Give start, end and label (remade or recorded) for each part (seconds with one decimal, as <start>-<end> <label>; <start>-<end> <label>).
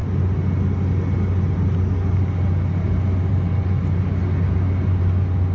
0.0-5.5 recorded